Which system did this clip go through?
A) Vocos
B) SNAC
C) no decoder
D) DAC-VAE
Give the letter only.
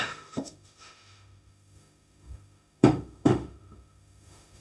D